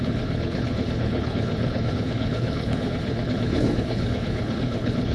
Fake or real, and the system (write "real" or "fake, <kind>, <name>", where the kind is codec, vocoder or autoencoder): fake, codec, HILCodec